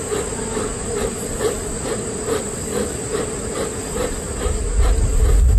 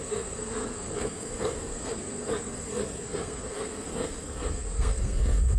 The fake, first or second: second